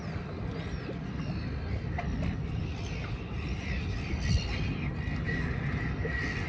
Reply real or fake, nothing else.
real